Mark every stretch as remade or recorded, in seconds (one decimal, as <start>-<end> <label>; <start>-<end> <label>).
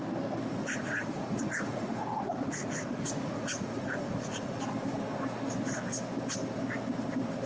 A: 0.0-0.6 recorded; 0.6-4.6 remade; 4.6-7.5 recorded